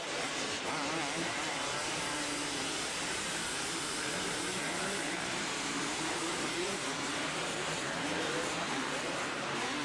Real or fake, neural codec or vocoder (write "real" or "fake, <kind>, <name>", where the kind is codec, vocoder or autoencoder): fake, vocoder, BigVGAN v2